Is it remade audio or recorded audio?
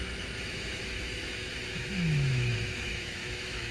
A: remade